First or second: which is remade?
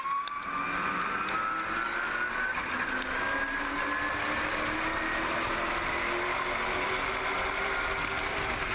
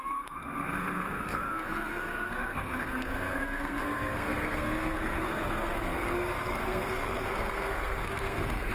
second